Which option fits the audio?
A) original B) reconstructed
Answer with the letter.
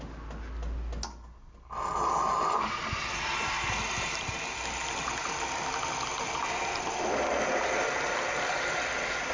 A